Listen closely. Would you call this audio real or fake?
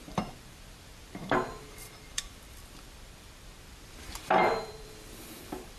fake